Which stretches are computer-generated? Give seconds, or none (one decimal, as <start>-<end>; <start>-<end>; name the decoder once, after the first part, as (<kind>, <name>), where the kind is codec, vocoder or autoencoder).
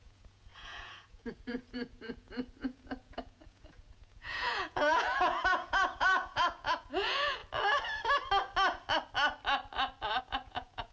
0.0-7.4 (vocoder, Vocos); 10.2-10.9